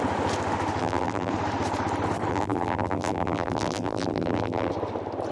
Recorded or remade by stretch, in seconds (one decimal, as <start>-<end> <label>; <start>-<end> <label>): 0.0-0.8 recorded; 0.8-1.3 remade; 1.3-2.3 recorded; 2.3-4.7 remade; 4.7-5.3 recorded